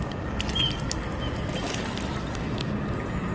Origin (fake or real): real